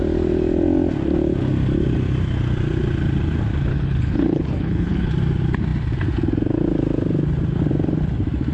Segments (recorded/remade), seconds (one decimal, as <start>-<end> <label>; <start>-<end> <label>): 0.0-3.7 recorded; 3.7-5.1 remade; 5.1-8.5 recorded